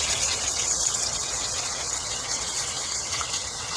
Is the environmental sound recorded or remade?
remade